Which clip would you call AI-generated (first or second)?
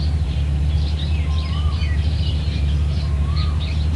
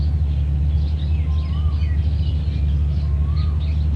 first